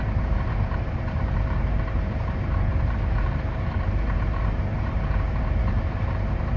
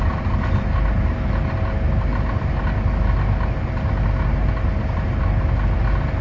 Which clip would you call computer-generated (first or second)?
first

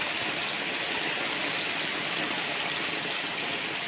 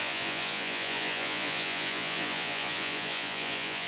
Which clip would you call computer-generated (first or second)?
second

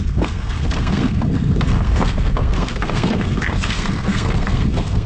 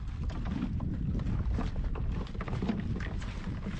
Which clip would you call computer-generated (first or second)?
first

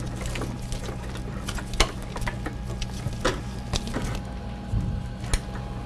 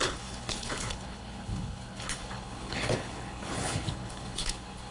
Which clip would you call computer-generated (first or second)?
second